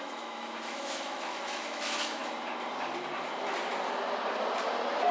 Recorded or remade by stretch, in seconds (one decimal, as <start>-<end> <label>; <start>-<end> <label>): 0.0-2.2 remade; 2.2-5.1 recorded